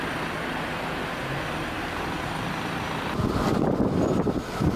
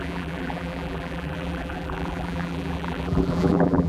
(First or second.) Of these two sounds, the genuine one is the first